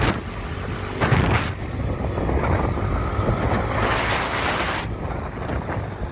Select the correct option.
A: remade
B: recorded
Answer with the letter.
A